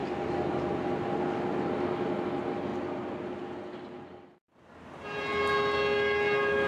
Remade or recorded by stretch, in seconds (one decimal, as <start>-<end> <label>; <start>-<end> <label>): 0.0-6.7 recorded